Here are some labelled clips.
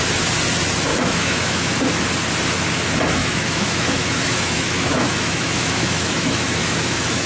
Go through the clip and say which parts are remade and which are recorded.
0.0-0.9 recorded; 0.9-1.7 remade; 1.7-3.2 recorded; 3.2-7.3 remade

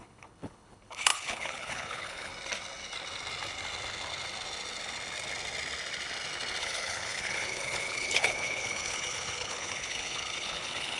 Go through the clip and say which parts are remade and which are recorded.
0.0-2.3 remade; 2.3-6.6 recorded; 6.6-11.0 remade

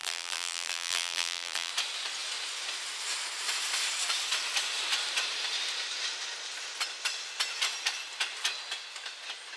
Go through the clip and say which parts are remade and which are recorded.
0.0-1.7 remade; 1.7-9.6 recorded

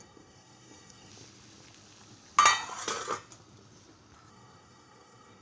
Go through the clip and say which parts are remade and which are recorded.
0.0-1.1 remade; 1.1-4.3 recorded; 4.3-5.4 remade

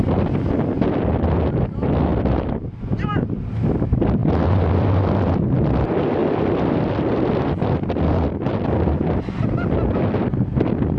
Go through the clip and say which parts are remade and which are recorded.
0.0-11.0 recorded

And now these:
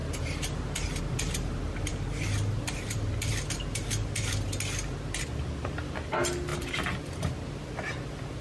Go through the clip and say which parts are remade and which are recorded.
0.0-8.4 recorded